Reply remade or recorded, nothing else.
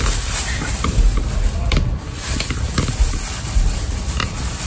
recorded